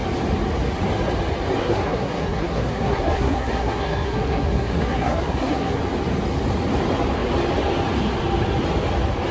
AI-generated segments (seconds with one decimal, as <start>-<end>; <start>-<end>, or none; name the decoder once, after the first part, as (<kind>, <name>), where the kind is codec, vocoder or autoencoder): 1.6-5.8 (codec, SNAC)